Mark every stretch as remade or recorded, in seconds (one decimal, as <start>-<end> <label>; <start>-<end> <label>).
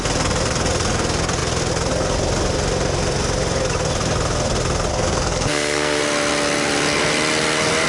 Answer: 0.0-4.9 recorded; 4.9-6.0 remade; 6.0-7.9 recorded